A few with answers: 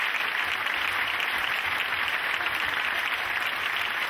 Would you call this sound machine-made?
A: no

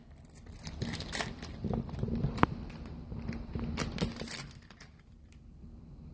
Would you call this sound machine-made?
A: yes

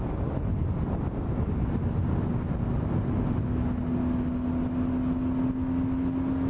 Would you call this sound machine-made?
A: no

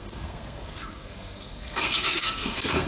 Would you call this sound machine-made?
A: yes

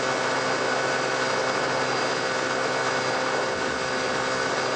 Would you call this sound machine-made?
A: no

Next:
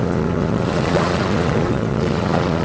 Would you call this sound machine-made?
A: yes